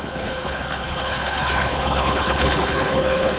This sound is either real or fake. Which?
fake